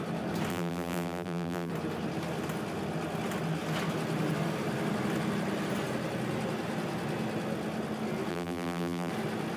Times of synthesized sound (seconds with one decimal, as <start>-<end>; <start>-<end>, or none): 0.5-1.7; 8.3-9.1

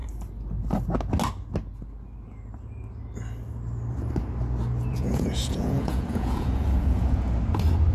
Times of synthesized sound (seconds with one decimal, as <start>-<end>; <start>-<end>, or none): 4.9-7.4

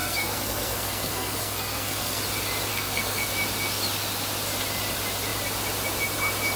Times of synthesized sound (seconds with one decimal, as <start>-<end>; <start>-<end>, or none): 0.0-2.2; 2.7-3.3

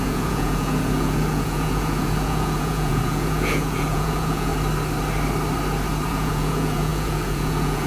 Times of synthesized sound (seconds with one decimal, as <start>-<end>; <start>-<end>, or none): 0.0-4.5; 6.1-7.9

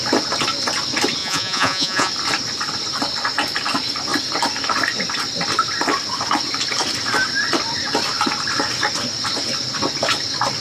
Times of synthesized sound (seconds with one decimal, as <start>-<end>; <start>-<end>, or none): 1.2-2.1

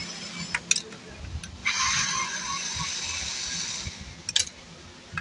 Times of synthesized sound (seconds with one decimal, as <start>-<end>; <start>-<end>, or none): 1.6-2.8

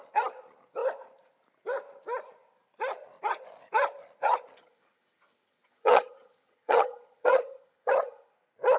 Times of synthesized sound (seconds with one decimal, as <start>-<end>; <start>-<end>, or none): 4.6-8.3

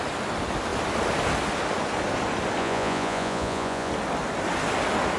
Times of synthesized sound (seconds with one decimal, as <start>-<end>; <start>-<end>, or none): 2.6-3.9